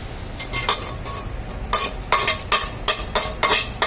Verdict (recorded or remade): recorded